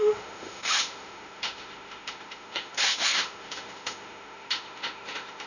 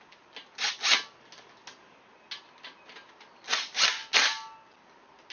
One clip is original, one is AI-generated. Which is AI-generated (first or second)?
first